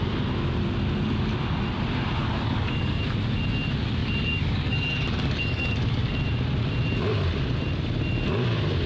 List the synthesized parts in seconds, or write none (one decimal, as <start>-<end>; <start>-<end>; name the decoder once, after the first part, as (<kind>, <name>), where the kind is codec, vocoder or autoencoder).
2.2-3.0 (codec, DAC); 4.0-6.1